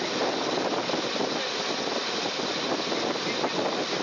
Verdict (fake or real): real